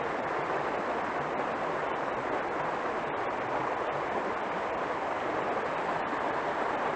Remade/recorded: recorded